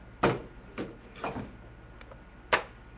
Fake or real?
real